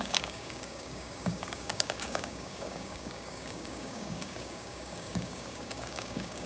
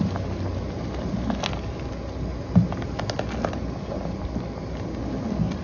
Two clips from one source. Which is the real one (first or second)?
second